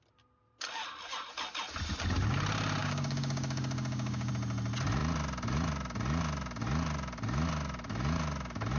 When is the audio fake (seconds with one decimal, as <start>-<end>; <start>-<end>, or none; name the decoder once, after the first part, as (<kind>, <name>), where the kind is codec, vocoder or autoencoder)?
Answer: 2.8-4.3 (codec, DAC)